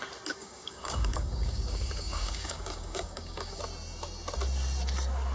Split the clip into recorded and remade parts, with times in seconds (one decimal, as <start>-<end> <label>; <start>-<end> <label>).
0.0-0.4 recorded; 0.4-3.6 remade; 3.6-5.3 recorded